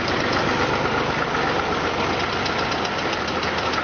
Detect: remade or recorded recorded